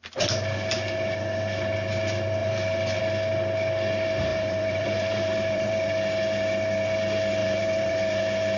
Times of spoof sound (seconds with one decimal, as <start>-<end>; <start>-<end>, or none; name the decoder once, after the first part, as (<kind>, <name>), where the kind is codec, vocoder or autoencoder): 2.4-3.0 (vocoder, BigVGAN v2); 4.3-5.9; 7.4-8.2